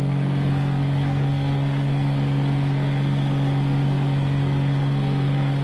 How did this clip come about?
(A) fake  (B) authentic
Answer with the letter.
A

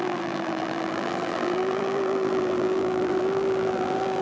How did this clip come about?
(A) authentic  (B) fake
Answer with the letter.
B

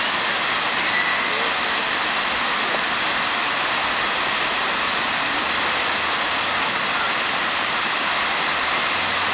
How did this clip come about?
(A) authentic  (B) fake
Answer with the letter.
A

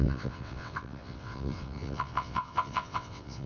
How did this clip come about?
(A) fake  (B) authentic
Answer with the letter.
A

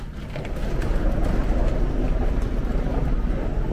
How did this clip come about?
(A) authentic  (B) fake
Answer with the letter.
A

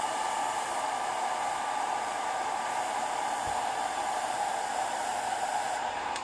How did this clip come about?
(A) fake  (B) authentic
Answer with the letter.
A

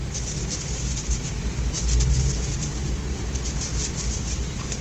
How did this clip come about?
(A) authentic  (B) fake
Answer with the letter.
A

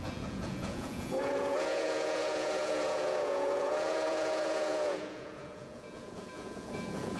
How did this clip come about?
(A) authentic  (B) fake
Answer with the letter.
B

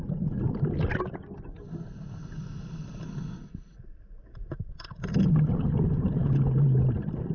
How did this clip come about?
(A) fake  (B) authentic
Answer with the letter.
B